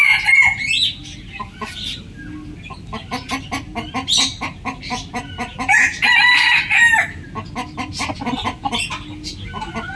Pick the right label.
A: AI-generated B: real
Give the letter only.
B